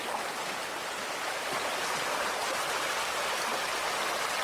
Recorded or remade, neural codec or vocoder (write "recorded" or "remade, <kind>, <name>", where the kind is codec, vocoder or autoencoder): recorded